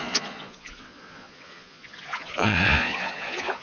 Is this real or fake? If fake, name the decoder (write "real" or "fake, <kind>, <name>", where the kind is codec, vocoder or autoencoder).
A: fake, vocoder, Vocos